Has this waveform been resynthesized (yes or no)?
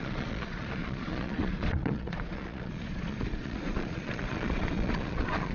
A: yes